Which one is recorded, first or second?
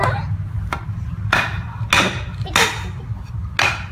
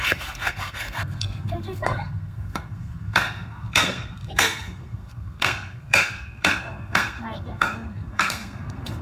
first